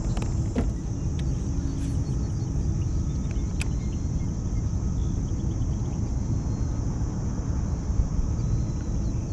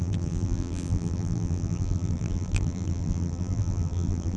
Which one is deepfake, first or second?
second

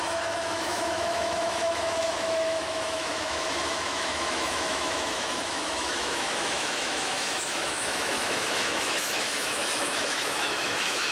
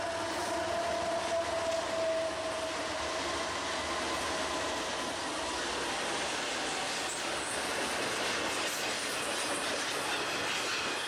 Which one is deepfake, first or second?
first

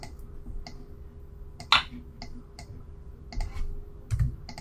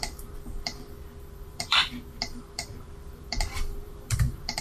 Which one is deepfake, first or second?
second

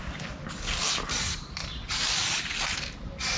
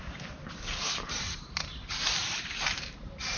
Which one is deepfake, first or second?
second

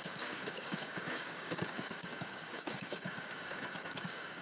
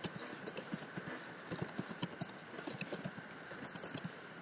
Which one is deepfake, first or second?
first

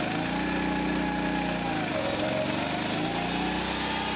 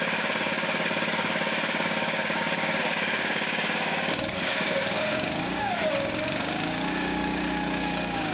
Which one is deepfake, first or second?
second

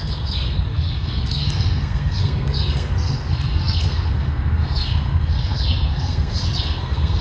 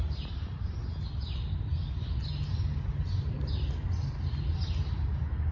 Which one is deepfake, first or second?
first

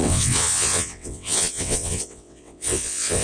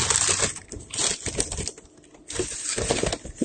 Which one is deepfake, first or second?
first